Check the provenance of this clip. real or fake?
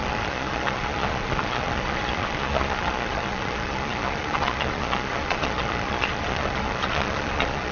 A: fake